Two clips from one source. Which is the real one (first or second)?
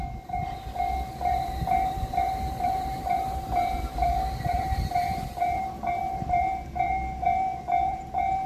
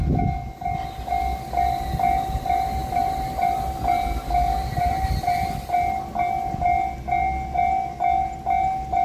second